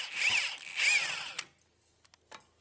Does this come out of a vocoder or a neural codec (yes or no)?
no